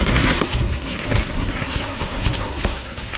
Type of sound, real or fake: fake